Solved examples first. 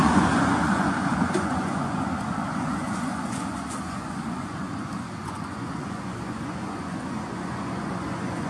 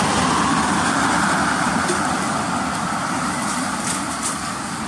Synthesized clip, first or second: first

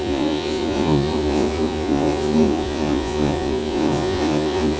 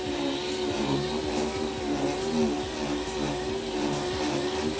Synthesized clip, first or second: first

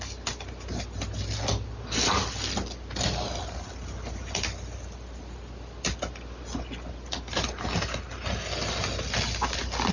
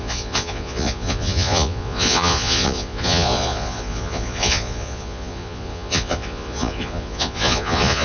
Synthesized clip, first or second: second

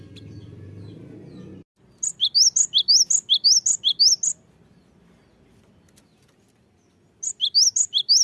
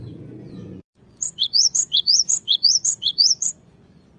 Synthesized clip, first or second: second